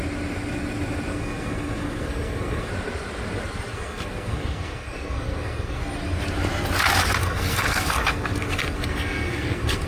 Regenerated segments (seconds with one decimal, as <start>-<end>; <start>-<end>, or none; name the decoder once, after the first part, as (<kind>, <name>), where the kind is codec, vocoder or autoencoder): 1.1-2.7 (codec, SNAC); 3.7-5.8; 7.2-9.9